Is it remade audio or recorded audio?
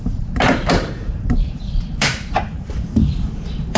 remade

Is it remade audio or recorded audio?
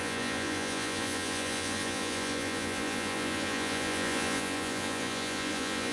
remade